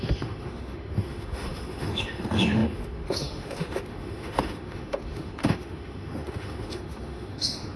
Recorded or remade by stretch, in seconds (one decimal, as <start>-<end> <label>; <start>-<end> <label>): 0.0-7.8 remade